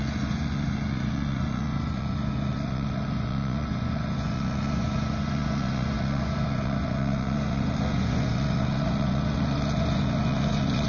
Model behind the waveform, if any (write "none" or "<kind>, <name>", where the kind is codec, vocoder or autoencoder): vocoder, Vocos